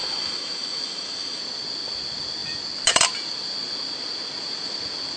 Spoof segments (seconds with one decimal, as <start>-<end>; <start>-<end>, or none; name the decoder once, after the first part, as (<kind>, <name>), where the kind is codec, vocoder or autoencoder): 0.0-1.4 (autoencoder, DAC-VAE)